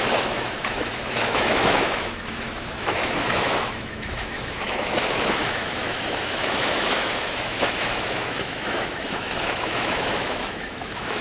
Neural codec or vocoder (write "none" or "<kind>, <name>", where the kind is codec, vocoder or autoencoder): autoencoder, DAC-VAE